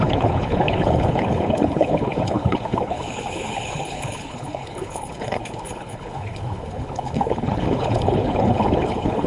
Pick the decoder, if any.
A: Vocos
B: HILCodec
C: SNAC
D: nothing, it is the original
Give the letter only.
B